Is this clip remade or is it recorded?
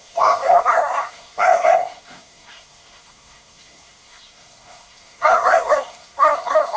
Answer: remade